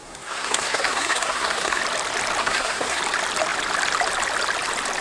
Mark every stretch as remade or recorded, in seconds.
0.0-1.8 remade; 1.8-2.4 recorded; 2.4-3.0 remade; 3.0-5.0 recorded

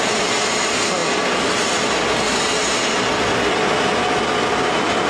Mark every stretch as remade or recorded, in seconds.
0.0-5.1 recorded

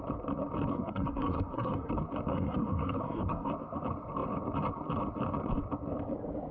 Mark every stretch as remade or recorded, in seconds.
0.0-0.7 recorded; 0.7-1.9 remade; 1.9-2.3 recorded; 2.3-3.5 remade; 3.5-6.5 recorded

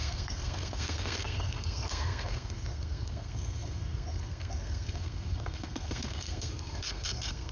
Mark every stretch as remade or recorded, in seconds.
0.0-7.5 remade

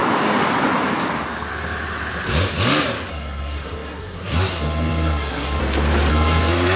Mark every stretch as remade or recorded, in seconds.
0.0-3.1 recorded; 3.1-5.6 remade; 5.6-6.1 recorded; 6.1-6.8 remade